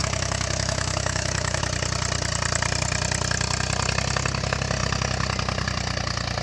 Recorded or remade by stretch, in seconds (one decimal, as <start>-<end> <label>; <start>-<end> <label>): 0.0-1.6 remade; 1.6-6.4 recorded